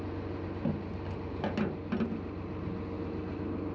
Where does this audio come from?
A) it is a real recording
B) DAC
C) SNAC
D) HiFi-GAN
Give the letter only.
A